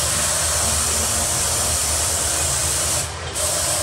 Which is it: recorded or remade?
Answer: recorded